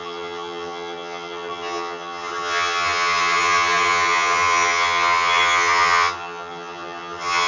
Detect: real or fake fake